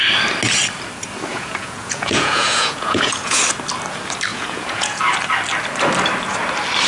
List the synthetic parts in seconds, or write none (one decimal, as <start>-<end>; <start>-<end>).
1.3-3.4; 4.3-5.0